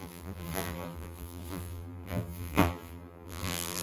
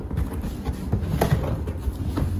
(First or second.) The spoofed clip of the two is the first